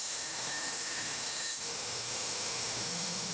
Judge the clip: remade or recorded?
remade